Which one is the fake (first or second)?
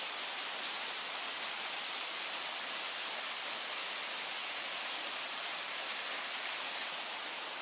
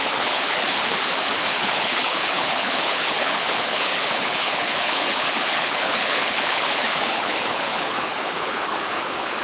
second